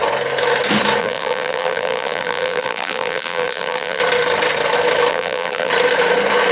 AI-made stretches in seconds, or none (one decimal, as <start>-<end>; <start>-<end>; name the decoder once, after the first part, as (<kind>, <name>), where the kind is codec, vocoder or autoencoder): 1.0-4.0 (vocoder, BigVGAN v2); 5.1-5.7